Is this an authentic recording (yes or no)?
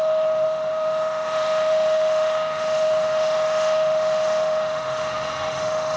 no